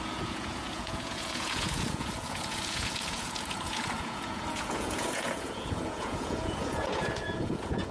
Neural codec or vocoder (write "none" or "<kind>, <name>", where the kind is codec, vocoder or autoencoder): vocoder, Vocos